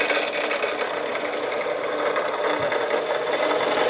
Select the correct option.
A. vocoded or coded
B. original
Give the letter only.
B